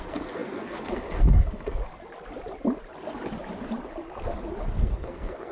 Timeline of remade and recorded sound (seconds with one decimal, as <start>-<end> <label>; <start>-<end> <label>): 0.0-1.8 remade; 1.8-4.7 recorded; 4.7-5.5 remade